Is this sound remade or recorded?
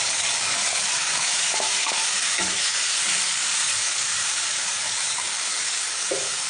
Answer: remade